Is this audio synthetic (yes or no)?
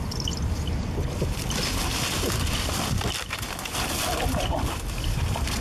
no